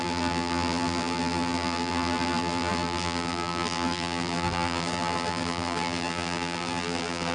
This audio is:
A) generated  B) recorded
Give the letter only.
A